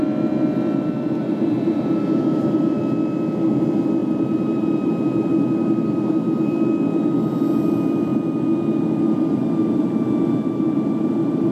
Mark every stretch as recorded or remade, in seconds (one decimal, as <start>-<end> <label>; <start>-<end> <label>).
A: 0.0-1.2 recorded; 1.2-2.8 remade; 2.8-4.0 recorded; 4.0-4.9 remade; 4.9-11.5 recorded